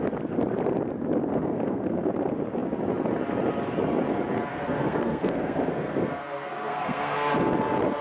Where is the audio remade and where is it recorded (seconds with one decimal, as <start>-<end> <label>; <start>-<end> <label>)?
0.0-1.3 recorded; 1.3-2.1 remade; 2.1-4.5 recorded; 4.5-7.3 remade; 7.3-8.0 recorded